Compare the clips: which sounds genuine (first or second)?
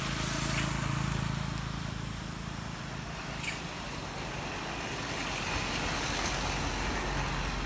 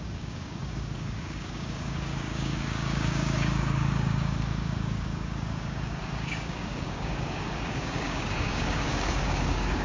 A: first